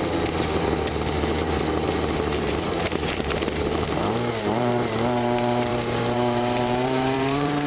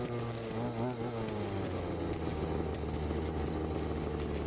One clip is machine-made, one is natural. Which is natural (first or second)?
second